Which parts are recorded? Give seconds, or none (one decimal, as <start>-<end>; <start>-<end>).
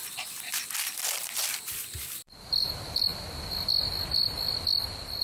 3.1-4.2